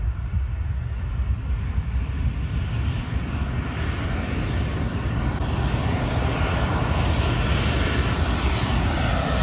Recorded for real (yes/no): yes